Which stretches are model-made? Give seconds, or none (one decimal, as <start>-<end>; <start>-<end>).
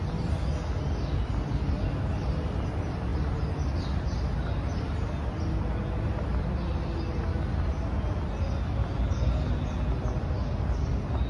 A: none